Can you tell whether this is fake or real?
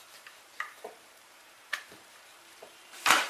fake